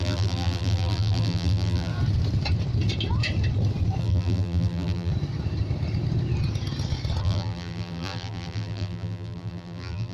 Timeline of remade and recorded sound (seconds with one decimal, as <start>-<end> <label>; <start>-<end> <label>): 0.0-1.9 remade; 1.9-4.0 recorded; 4.0-5.1 remade; 5.1-7.2 recorded; 7.2-10.1 remade